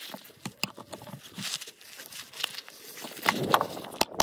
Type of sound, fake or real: real